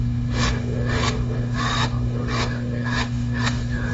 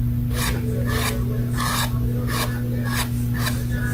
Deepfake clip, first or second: first